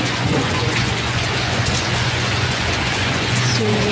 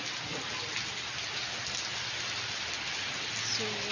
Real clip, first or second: second